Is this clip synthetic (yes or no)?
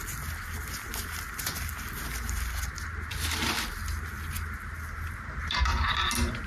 no